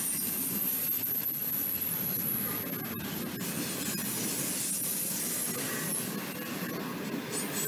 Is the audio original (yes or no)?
yes